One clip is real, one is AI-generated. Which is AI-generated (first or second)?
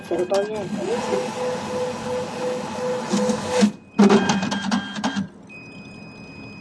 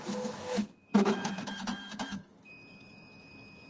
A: second